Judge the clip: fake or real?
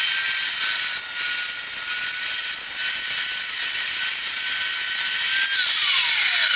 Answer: real